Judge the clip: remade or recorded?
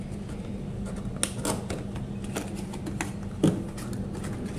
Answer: recorded